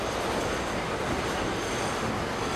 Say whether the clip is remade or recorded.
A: recorded